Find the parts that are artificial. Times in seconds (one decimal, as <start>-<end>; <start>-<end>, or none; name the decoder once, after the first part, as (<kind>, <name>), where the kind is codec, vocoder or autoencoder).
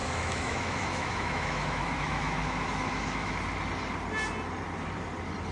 0.0-3.3 (autoencoder, DAC-VAE)